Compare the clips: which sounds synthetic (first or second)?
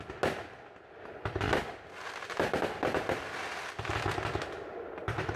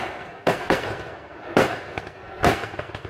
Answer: second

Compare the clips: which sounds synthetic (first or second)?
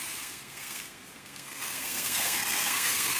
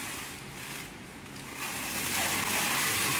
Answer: first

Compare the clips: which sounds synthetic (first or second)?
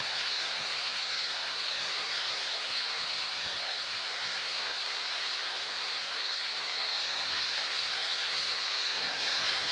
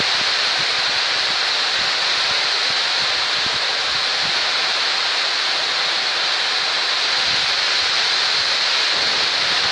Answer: first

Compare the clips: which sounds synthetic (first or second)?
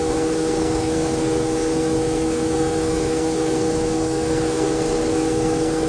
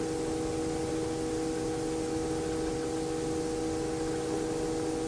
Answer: first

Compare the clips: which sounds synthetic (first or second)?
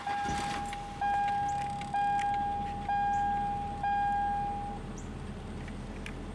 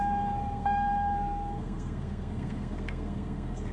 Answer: second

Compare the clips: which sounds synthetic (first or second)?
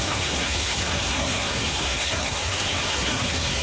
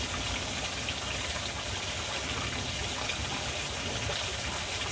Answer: first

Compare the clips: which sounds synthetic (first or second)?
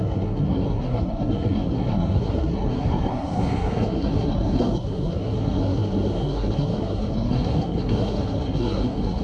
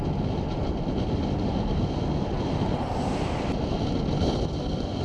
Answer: first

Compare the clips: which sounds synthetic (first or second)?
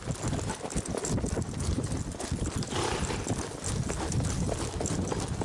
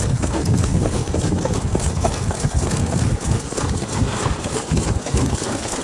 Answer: second